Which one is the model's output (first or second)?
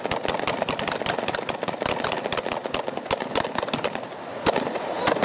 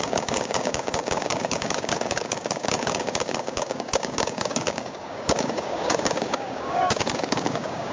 second